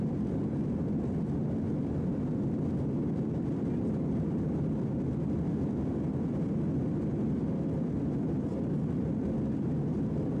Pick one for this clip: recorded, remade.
recorded